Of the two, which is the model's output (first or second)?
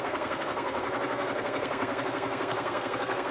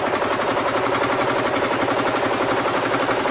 first